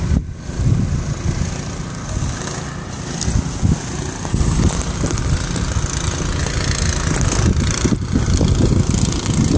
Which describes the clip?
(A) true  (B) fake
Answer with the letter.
A